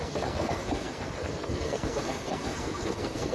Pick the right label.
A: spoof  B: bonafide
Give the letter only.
A